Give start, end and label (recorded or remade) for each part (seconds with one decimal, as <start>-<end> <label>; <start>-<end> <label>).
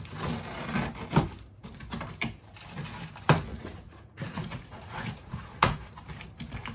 0.0-3.5 recorded; 3.5-5.9 remade; 5.9-6.7 recorded